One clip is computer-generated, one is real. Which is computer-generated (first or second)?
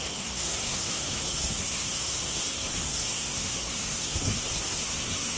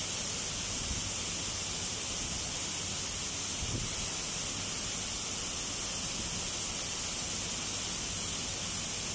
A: first